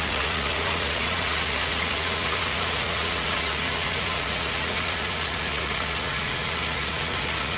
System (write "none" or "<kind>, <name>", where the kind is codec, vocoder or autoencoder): vocoder, Vocos